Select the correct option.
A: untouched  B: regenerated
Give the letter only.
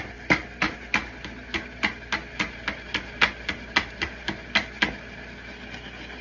A